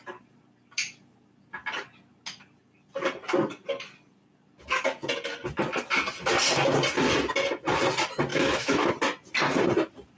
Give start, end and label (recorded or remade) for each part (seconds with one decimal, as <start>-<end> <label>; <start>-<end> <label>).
0.0-8.3 recorded; 8.3-8.9 remade; 8.9-10.2 recorded